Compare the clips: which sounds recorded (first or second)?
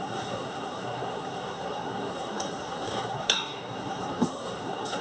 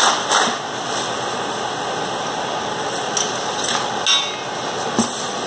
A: second